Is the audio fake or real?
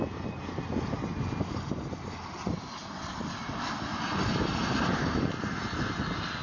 real